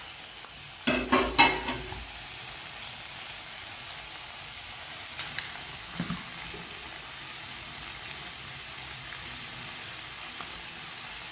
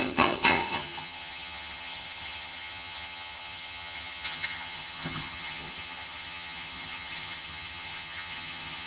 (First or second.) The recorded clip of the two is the first